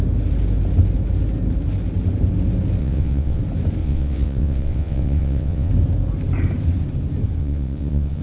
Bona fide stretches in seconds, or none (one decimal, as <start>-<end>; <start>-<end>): 0.0-2.8; 3.4-3.8; 5.7-7.4